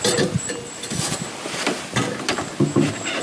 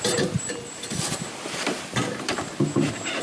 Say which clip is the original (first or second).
first